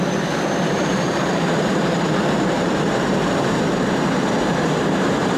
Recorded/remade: remade